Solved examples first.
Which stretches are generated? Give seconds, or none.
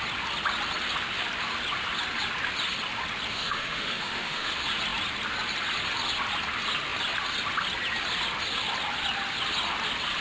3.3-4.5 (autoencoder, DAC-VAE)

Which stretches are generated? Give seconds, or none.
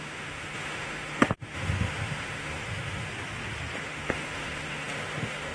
0.0-3.1 (autoencoder, DAC-VAE); 3.8-5.5